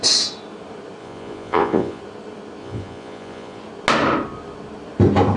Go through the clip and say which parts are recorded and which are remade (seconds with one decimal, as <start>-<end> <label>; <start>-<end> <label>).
0.0-1.0 recorded; 1.0-2.0 remade; 2.0-2.6 recorded; 2.6-3.6 remade; 3.6-5.4 recorded